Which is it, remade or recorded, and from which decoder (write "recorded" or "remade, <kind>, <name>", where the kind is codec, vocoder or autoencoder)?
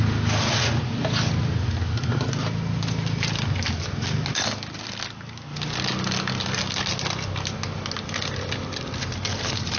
recorded